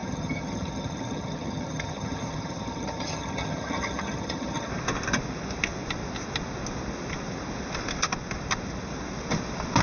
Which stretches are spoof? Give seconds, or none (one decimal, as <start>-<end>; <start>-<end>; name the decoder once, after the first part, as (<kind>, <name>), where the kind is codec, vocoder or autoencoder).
0.0-4.7 (vocoder, HiFi-GAN)

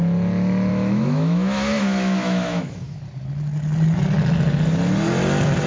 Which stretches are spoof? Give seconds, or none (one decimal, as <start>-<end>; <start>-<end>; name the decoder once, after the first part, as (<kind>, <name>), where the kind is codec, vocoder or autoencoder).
0.7-3.0 (autoencoder, DAC-VAE)

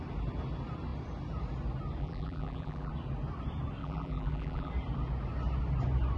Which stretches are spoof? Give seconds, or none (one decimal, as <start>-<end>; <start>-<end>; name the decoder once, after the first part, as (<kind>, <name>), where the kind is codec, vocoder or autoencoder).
2.0-2.9 (vocoder, BigVGAN v2); 3.8-4.7

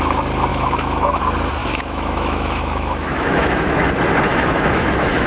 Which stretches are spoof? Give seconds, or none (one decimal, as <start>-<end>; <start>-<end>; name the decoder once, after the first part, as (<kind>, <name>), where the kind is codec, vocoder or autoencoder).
0.5-1.2 (autoencoder, DAC-VAE); 1.6-3.9; 4.3-5.3